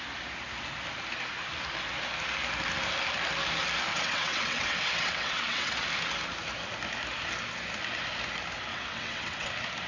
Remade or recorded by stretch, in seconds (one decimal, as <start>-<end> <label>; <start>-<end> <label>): 0.0-3.9 recorded; 3.9-5.8 remade; 5.8-8.7 recorded; 8.7-9.5 remade; 9.5-9.9 recorded